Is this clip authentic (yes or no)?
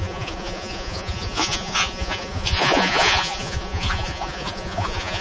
no